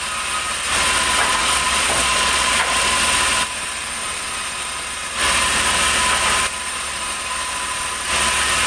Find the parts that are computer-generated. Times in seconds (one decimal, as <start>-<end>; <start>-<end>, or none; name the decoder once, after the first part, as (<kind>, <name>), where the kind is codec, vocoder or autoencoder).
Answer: 1.3-2.9 (vocoder, Vocos)